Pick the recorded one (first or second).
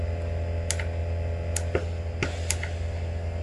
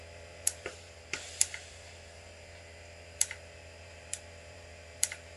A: first